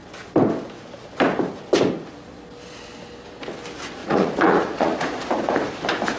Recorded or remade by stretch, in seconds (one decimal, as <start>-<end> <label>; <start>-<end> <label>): 0.0-4.0 recorded; 4.0-5.7 remade; 5.7-6.2 recorded